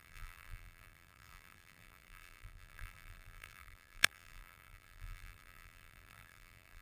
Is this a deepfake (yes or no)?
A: yes